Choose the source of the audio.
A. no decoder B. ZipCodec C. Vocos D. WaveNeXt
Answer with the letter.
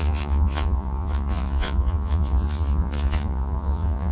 C